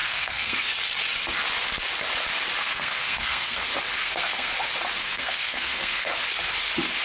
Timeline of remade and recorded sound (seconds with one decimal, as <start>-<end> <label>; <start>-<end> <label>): 0.0-0.7 remade; 0.7-2.6 recorded; 2.6-3.6 remade; 3.6-4.0 recorded; 4.0-4.5 remade; 4.5-5.0 recorded; 5.0-6.1 remade; 6.1-7.0 recorded

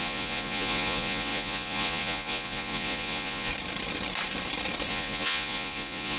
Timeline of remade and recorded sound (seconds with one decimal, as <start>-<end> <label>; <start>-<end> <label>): 0.0-3.5 remade; 3.5-4.9 recorded; 4.9-6.2 remade

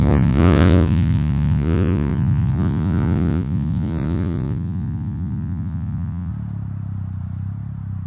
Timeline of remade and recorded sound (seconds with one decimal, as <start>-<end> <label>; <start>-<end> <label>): 0.0-6.3 remade; 6.3-8.1 recorded